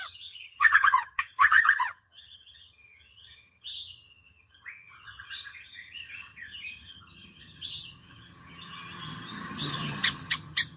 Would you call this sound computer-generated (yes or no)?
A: yes